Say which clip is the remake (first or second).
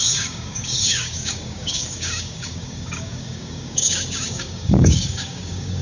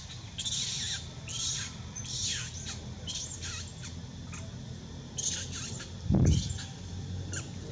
first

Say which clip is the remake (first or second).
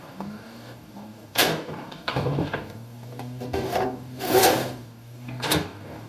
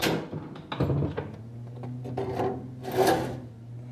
first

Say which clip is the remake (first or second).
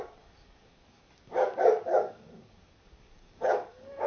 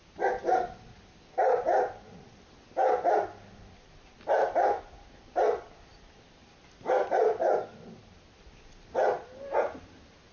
first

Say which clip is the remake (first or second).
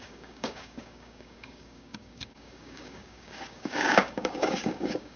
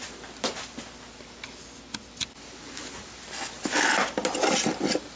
first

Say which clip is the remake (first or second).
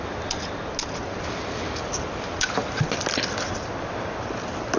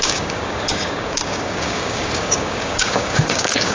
second